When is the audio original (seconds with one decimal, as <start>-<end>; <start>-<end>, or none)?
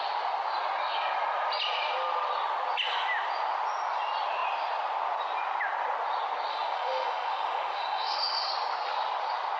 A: 0.0-6.5; 8.5-9.6